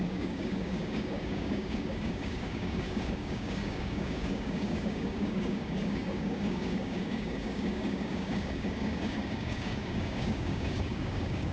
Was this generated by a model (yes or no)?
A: yes